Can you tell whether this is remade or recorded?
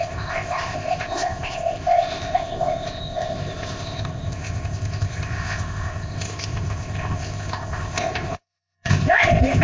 remade